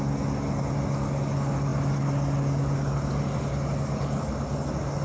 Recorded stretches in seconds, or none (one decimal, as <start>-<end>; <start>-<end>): 0.0-5.0